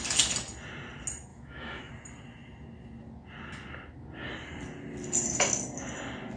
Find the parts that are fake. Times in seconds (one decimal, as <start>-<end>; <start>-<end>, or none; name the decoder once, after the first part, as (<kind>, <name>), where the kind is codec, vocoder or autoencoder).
1.3-1.9 (autoencoder, DAC-VAE)

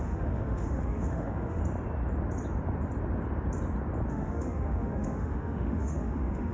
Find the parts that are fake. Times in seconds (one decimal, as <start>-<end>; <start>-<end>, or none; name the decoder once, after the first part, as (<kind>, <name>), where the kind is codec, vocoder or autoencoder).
0.0-1.6 (autoencoder, DAC-VAE); 4.1-6.5

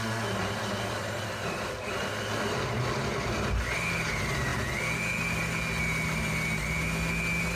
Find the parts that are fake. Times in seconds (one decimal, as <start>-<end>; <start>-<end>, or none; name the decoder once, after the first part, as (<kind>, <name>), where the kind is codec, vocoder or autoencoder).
none

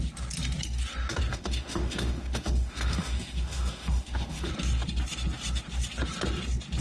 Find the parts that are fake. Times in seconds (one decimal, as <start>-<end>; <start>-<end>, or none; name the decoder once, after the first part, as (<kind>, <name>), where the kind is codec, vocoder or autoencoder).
1.3-4.5 (autoencoder, DAC-VAE)

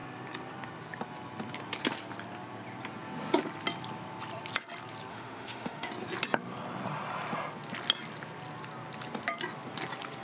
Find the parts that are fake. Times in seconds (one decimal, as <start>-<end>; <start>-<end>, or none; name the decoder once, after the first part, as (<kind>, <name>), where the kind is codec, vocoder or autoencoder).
5.1-5.9 (autoencoder, DAC-VAE)